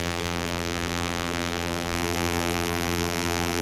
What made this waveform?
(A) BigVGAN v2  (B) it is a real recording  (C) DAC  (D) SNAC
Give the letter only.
A